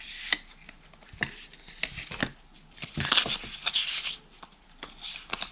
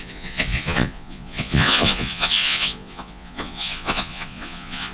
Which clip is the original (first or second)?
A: first